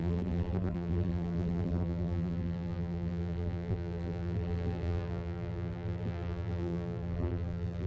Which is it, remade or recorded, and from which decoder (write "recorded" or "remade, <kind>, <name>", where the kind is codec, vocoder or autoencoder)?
remade, vocoder, BigVGAN v2